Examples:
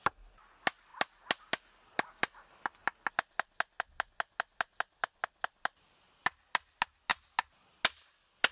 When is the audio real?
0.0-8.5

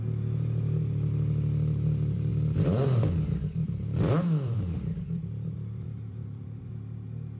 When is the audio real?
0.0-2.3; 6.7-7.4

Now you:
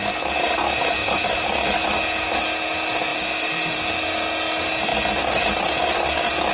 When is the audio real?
0.0-3.1; 3.8-6.5

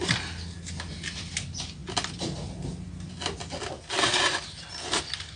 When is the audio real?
0.0-5.4